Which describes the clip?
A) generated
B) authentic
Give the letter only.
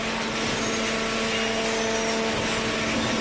B